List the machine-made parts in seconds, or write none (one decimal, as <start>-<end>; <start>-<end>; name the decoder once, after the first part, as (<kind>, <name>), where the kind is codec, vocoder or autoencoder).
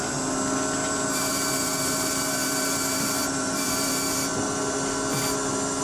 0.8-4.3 (vocoder, BigVGAN v2)